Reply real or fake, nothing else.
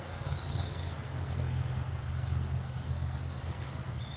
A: fake